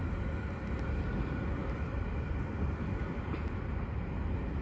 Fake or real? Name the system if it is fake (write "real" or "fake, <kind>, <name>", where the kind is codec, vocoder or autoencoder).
real